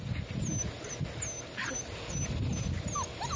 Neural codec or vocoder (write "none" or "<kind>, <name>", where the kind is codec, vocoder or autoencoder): none